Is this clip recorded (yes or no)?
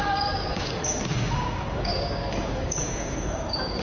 no